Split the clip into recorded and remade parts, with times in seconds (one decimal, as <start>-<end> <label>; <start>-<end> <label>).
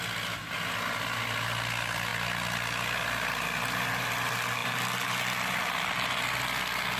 0.0-7.0 recorded